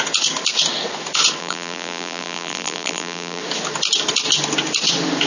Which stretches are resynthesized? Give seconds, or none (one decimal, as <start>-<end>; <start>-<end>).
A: 1.4-3.4